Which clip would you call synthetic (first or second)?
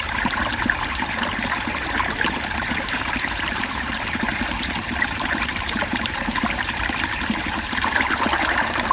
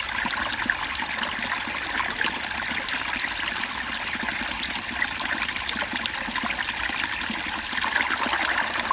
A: first